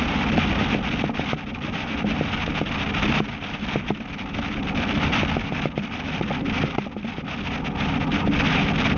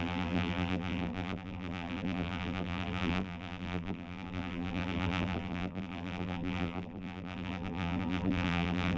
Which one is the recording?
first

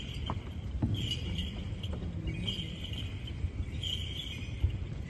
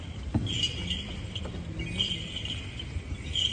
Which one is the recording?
second